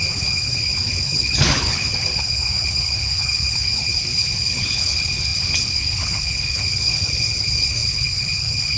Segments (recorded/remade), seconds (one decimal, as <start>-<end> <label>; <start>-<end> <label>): 0.0-8.8 remade

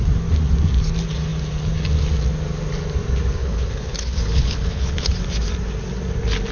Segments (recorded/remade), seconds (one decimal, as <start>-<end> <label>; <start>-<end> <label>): 0.0-3.4 recorded; 3.4-5.1 remade; 5.1-6.5 recorded

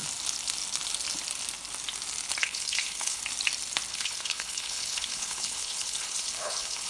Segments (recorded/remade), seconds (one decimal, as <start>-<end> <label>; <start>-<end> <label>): 0.0-2.4 recorded; 2.4-3.2 remade; 3.2-3.9 recorded; 3.9-6.9 remade

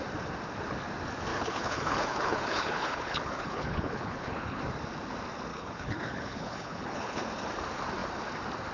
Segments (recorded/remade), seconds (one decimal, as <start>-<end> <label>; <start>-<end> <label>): 0.0-1.3 recorded; 1.3-4.6 remade; 4.6-5.5 recorded; 5.5-7.2 remade; 7.2-8.7 recorded

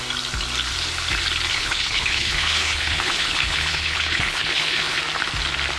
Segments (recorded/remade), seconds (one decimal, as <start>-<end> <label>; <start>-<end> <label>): 0.0-1.5 recorded; 1.5-5.0 remade; 5.0-5.8 recorded

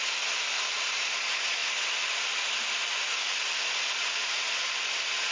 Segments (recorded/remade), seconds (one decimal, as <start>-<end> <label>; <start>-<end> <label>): 0.0-5.3 recorded

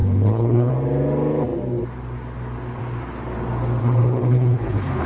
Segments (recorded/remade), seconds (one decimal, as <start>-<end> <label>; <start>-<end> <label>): 0.0-0.7 remade; 0.7-3.8 recorded; 3.8-5.1 remade